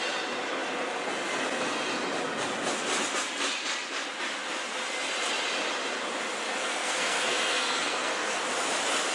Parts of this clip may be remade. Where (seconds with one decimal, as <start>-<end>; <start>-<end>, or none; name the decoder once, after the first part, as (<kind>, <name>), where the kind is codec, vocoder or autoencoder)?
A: 6.6-8.4 (codec, SNAC)